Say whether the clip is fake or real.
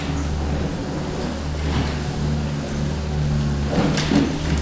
real